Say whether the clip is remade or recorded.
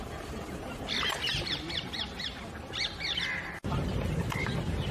recorded